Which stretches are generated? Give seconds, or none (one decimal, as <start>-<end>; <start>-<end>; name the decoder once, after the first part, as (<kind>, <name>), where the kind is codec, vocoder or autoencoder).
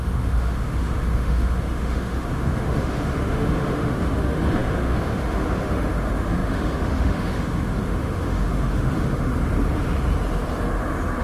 0.0-9.3 (autoencoder, DAC-VAE)